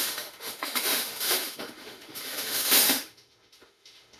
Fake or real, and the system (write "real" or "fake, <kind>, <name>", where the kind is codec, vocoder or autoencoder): fake, autoencoder, DAC-VAE